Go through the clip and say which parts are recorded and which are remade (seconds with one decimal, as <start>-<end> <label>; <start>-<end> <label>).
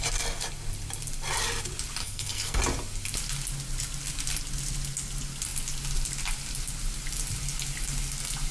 0.0-2.0 recorded; 2.0-2.6 remade; 2.6-8.5 recorded